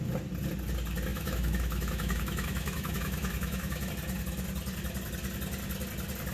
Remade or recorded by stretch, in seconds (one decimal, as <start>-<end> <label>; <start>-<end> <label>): 0.0-1.1 recorded; 1.1-3.9 remade; 3.9-6.3 recorded